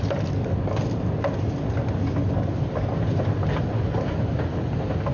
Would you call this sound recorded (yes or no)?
yes